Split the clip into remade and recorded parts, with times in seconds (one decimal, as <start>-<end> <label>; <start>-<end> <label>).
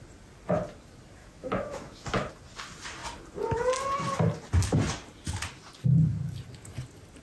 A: 0.0-1.2 recorded; 1.2-2.3 remade; 2.3-7.2 recorded